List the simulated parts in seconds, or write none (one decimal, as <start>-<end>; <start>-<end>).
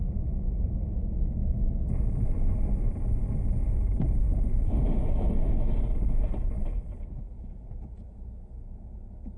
none